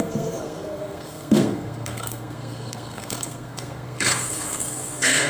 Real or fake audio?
fake